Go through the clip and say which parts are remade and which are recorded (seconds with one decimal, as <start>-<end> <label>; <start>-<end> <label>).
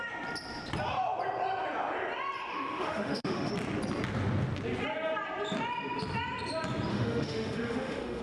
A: 0.0-2.5 recorded; 2.5-3.5 remade; 3.5-6.9 recorded; 6.9-8.2 remade